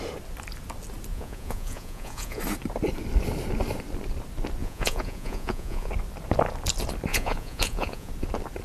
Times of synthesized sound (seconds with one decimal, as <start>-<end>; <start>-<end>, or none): 1.1-2.4; 4.6-5.9; 7.1-8.1